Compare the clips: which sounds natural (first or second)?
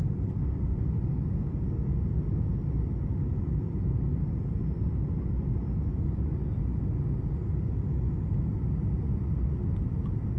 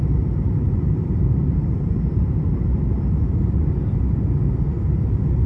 first